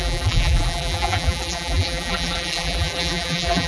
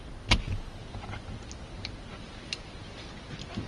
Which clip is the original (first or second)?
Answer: second